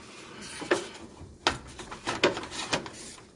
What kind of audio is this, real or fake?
real